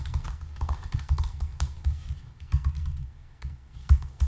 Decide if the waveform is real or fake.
fake